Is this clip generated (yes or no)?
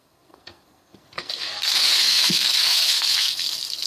yes